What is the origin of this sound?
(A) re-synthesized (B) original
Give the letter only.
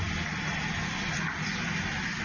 B